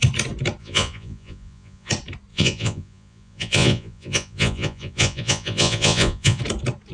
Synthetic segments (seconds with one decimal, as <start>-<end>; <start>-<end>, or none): 0.6-1.9; 2.3-6.4